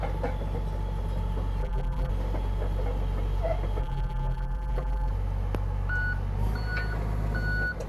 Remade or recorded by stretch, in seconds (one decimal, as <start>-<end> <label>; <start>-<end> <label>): 0.0-1.6 recorded; 1.6-2.1 remade; 2.1-3.8 recorded; 3.8-5.1 remade; 5.1-7.9 recorded